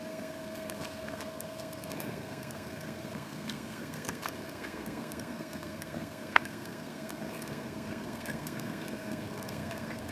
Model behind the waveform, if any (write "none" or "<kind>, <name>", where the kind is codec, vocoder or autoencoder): codec, SNAC